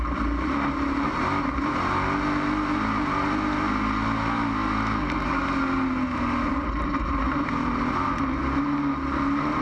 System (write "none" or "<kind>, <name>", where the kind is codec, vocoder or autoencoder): none